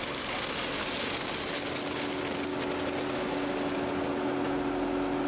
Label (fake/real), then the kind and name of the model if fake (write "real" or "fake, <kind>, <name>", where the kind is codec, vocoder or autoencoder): real